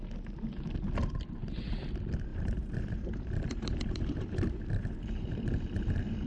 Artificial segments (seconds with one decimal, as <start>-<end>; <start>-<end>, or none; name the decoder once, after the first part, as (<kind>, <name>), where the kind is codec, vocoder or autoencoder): 2.3-6.3 (vocoder, BigVGAN v2)